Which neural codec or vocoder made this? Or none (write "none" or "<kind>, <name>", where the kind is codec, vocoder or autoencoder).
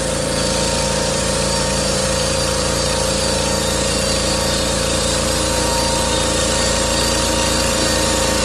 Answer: vocoder, BigVGAN v2